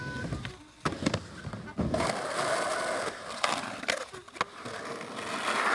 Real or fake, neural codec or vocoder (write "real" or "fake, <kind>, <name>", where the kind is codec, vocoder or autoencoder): real